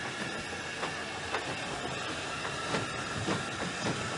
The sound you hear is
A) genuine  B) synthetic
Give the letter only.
A